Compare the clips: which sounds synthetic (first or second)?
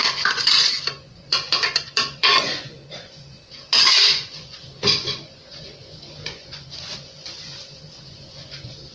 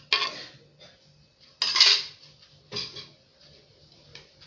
first